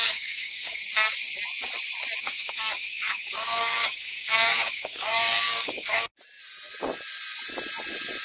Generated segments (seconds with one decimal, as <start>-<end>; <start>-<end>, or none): 0.0-0.8; 2.2-6.1